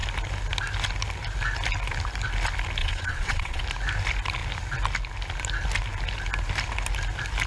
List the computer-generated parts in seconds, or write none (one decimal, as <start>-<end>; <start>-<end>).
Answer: 2.8-3.6